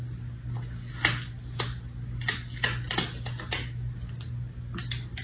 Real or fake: real